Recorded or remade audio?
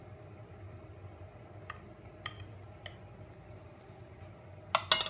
recorded